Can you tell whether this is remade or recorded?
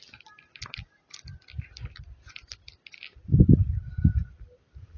recorded